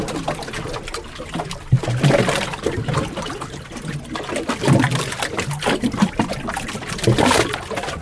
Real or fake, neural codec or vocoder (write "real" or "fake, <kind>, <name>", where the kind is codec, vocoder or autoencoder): real